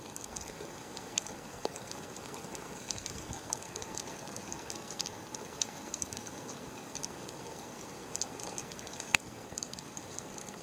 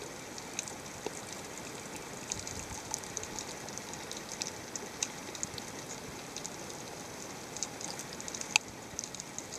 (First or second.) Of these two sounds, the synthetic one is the first